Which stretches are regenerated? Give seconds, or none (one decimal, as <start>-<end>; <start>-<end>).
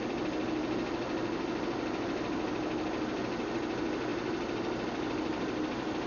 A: 4.1-6.1